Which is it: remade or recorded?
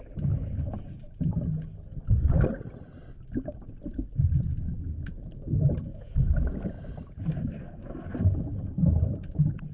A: recorded